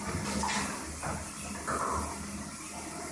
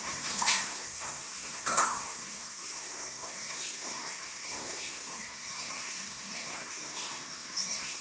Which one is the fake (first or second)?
second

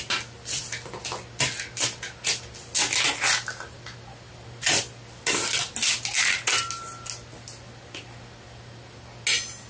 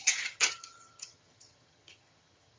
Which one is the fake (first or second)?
second